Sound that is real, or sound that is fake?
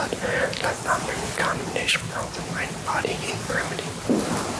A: real